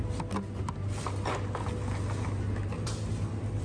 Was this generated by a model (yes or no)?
no